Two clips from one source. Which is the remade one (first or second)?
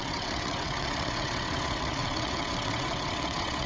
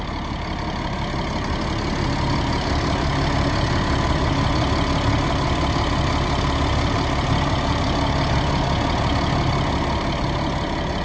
first